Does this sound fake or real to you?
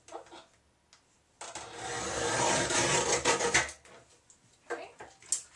real